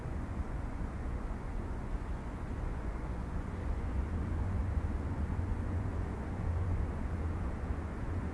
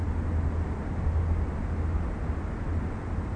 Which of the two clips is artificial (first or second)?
first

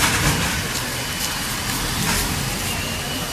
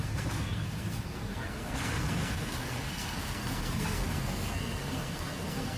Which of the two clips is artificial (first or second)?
second